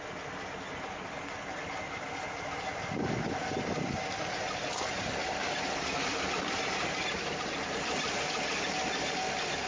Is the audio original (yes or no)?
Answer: yes